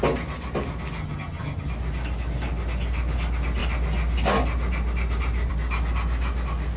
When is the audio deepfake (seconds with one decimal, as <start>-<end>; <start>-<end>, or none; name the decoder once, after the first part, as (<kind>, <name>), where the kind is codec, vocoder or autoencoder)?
1.0-1.7 (vocoder, HiFi-GAN)